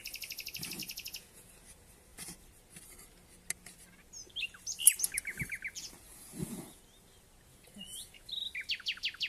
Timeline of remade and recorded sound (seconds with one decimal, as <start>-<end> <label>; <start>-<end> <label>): 0.0-0.8 recorded; 0.8-1.5 remade; 1.5-6.1 recorded; 6.1-6.8 remade; 6.8-7.5 recorded; 7.5-8.3 remade; 8.3-9.3 recorded